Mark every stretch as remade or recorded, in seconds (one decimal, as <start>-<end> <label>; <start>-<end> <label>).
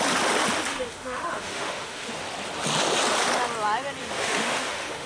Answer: 0.0-0.7 recorded; 0.7-2.2 remade; 2.2-4.0 recorded; 4.0-5.1 remade